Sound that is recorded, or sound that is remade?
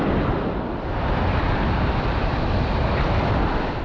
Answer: recorded